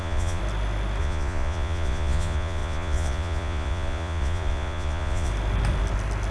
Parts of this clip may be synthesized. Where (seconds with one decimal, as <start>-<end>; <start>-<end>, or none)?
0.0-0.4; 1.0-5.3